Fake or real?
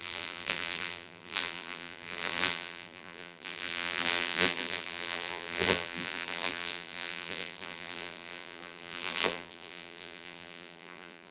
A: fake